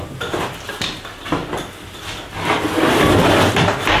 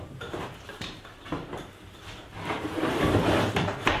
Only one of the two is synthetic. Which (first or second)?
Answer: second